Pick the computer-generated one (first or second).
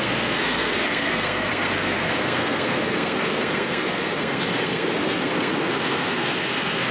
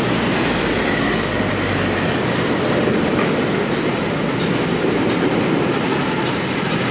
first